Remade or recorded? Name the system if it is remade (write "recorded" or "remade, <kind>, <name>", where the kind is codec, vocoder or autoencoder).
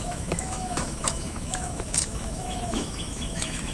remade, autoencoder, DAC-VAE